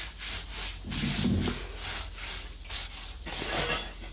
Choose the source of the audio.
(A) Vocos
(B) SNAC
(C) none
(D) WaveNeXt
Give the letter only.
C